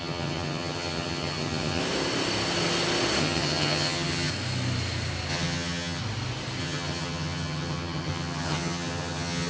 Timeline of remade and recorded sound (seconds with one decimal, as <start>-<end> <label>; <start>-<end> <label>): 0.0-1.8 remade; 1.8-3.2 recorded; 3.2-4.3 remade; 4.3-5.3 recorded; 5.3-6.0 remade; 6.0-6.6 recorded; 6.6-9.5 remade